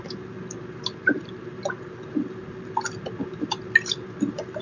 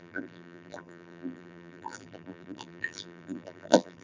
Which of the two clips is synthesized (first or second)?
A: second